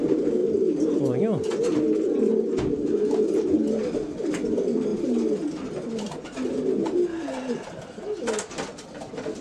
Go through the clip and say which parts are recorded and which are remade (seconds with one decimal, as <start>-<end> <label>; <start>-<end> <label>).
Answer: 0.0-9.4 recorded